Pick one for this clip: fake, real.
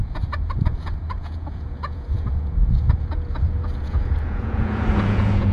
fake